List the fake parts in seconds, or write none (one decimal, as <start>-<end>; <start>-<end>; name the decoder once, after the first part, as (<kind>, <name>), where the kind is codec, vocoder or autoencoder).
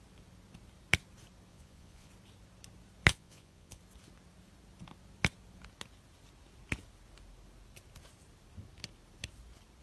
1.5-2.1 (vocoder, Vocos); 3.1-3.8